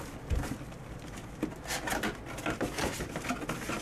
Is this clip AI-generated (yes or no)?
no